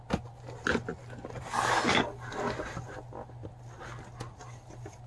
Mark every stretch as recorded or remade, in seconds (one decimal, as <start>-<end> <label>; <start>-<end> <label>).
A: 0.0-5.1 recorded